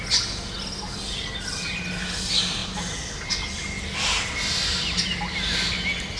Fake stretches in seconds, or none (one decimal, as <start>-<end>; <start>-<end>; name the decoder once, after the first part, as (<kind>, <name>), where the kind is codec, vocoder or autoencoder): none